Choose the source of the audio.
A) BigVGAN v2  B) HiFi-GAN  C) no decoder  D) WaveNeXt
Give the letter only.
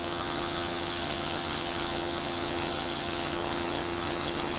B